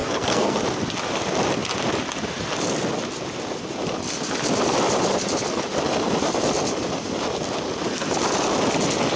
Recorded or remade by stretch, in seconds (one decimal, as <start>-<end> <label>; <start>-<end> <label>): 0.0-0.6 remade; 0.6-9.2 recorded